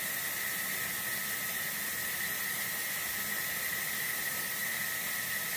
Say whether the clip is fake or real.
real